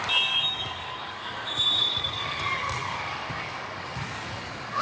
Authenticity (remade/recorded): remade